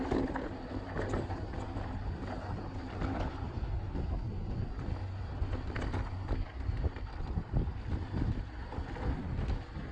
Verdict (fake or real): real